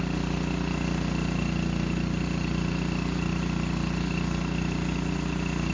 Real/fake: real